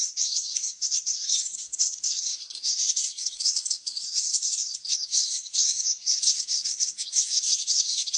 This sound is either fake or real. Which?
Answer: fake